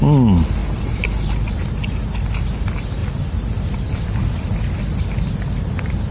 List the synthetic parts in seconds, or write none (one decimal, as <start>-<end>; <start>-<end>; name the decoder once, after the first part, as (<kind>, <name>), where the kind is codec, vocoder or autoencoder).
none